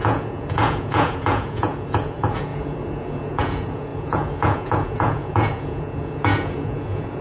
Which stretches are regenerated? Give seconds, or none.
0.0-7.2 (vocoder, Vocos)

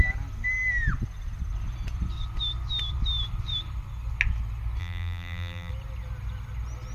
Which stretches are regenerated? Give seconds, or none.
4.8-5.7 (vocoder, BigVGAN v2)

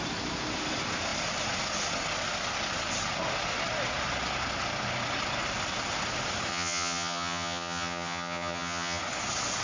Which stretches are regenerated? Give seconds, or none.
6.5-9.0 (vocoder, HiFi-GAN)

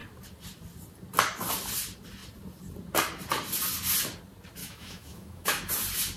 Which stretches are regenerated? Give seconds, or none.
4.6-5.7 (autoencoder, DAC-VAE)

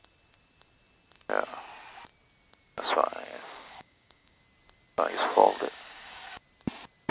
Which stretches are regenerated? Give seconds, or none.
3.1-4.4 (codec, DAC); 5.3-6.4